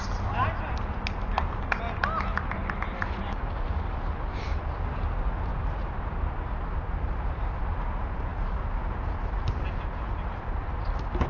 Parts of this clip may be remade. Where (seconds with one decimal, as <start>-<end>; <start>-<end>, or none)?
none